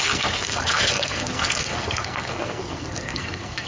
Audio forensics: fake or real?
fake